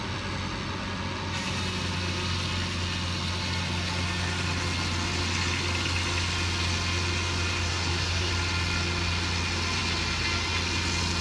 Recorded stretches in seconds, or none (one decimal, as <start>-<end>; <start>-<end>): 0.0-7.7; 8.3-11.2